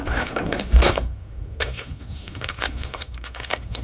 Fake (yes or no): yes